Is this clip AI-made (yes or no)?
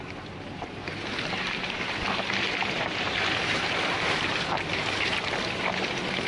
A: yes